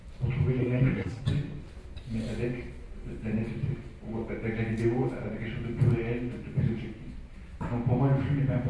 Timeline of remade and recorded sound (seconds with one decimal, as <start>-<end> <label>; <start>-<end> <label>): 0.0-0.6 recorded; 0.6-1.2 remade; 1.2-8.7 recorded